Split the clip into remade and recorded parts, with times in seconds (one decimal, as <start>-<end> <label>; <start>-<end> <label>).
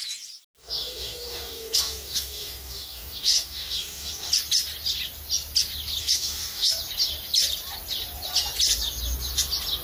0.0-0.6 recorded; 0.6-4.3 remade; 4.3-6.0 recorded; 6.0-6.7 remade; 6.7-9.8 recorded